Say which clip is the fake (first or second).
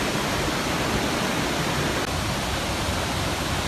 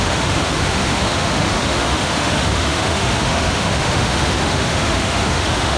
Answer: second